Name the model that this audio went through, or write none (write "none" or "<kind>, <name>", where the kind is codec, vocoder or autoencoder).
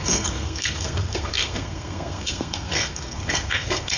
codec, SNAC